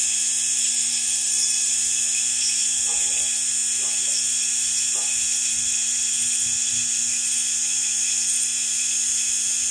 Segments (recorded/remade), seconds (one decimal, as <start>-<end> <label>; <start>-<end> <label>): 0.0-0.6 recorded; 0.6-1.7 remade; 1.7-9.7 recorded